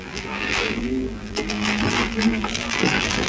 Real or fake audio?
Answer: fake